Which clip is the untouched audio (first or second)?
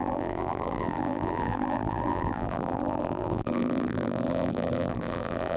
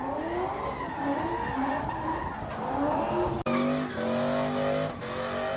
second